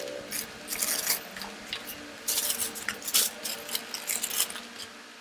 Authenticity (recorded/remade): recorded